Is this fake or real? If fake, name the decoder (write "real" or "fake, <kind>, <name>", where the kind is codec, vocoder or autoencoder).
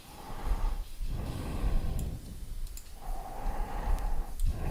real